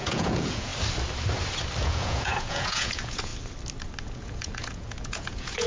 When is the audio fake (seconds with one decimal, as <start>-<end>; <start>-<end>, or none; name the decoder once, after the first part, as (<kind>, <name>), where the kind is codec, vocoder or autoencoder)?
0.0-0.7 (vocoder, Vocos); 1.8-3.3; 4.0-5.7